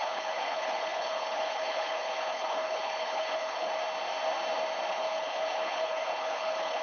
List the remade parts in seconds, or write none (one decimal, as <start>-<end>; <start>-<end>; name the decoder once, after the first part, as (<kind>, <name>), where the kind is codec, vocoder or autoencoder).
0.0-3.7 (codec, HILCodec); 4.9-6.8